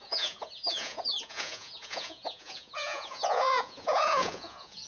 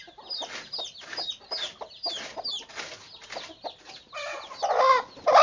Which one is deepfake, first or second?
first